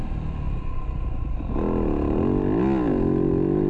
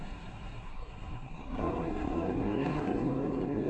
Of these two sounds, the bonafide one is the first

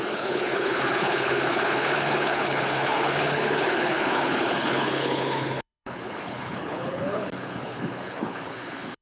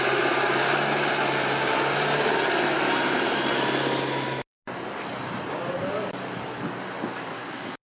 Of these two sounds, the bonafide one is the second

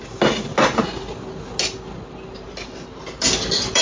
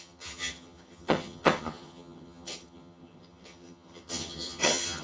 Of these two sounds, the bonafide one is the first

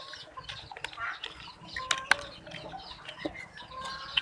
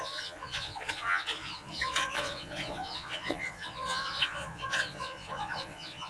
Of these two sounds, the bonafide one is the first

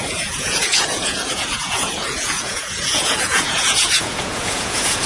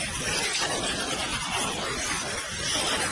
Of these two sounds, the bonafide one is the second